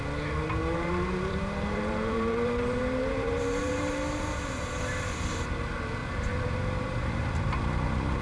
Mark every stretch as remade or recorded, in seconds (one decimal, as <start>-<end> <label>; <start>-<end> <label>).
0.0-0.6 recorded; 0.6-4.4 remade; 4.4-6.0 recorded; 6.0-7.6 remade; 7.6-8.2 recorded